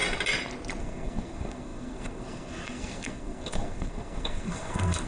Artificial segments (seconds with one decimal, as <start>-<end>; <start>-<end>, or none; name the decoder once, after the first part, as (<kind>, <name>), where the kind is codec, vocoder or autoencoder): 0.8-5.1 (codec, SNAC)